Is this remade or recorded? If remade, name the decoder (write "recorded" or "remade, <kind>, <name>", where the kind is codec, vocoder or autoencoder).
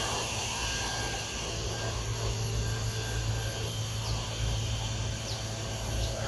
recorded